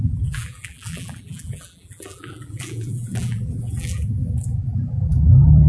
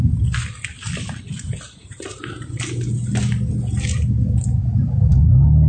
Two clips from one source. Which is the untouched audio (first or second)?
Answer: second